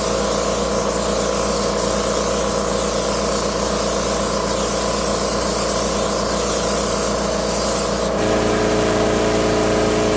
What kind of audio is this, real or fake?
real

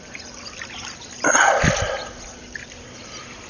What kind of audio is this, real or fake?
real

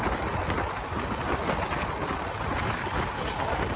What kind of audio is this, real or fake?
real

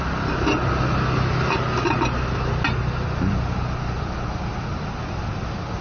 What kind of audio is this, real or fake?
real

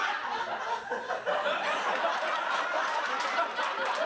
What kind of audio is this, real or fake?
real